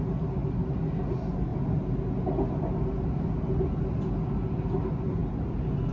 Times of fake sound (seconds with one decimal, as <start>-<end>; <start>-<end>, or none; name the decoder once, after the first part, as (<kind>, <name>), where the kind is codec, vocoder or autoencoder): none